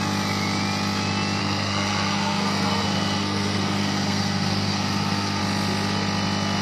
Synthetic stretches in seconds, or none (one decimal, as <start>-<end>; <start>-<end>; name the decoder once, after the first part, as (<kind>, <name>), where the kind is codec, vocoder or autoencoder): 1.4-5.4 (codec, SNAC)